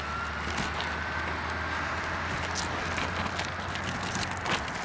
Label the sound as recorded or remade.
recorded